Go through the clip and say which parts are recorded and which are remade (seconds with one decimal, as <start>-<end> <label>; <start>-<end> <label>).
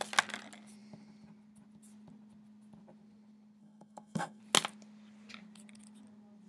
0.0-3.6 recorded; 3.6-4.4 remade; 4.4-6.5 recorded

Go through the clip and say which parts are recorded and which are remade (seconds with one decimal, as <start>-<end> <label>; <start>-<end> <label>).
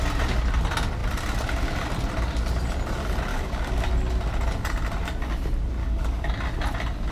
0.0-3.3 recorded; 3.3-3.9 remade; 3.9-5.8 recorded; 5.8-6.3 remade; 6.3-7.1 recorded